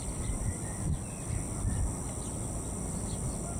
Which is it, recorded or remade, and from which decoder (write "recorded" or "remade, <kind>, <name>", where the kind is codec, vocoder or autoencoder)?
recorded